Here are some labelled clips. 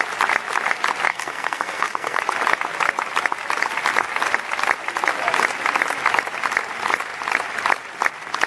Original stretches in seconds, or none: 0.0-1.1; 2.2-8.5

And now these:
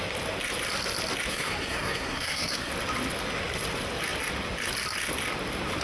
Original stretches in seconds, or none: 0.0-1.3; 2.7-5.8

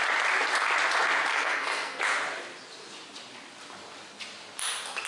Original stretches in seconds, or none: 0.0-1.3; 2.0-5.1

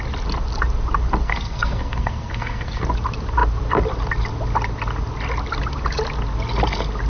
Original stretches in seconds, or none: 0.0-1.2; 2.8-7.1

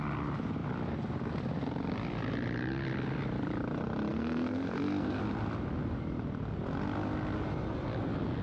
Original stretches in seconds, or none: 0.0-4.1; 5.2-8.4

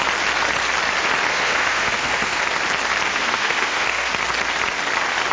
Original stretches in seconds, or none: 0.0-1.3; 2.4-3.1; 4.1-5.3